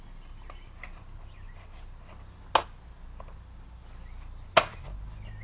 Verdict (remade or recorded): recorded